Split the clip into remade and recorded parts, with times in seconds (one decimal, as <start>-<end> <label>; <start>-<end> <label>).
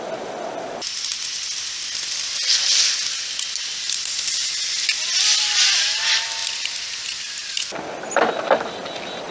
0.0-9.3 recorded